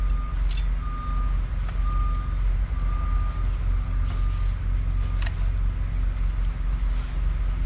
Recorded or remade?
recorded